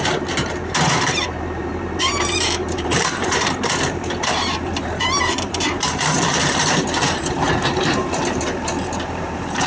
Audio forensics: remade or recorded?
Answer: remade